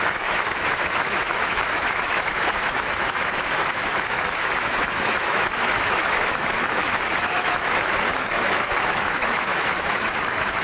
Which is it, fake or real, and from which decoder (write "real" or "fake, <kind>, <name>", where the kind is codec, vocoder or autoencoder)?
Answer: fake, autoencoder, DAC-VAE